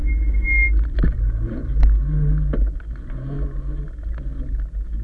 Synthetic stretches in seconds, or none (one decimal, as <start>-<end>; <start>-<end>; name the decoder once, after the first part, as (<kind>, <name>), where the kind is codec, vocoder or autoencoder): none